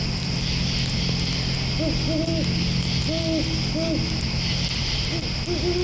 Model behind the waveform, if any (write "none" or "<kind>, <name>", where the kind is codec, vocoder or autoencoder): none